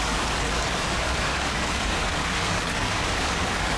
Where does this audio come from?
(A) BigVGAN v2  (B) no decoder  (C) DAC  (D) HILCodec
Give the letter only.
C